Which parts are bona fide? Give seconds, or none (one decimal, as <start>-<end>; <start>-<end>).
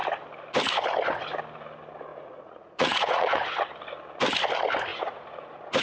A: 0.0-2.1; 3.6-4.9